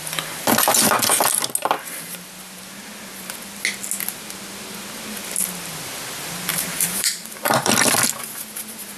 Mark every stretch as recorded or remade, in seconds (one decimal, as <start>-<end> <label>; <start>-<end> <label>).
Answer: 0.0-6.5 recorded; 6.5-7.7 remade; 7.7-9.0 recorded